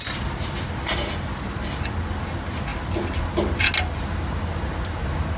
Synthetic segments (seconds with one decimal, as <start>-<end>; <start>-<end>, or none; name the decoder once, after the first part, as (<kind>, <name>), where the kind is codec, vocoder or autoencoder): none